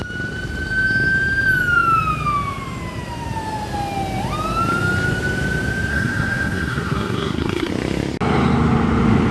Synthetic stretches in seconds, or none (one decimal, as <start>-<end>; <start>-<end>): 5.9-7.7